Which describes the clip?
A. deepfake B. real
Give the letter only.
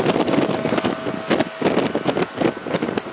B